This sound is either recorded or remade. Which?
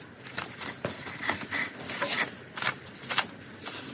recorded